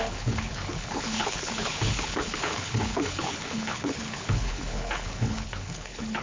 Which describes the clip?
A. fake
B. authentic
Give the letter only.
A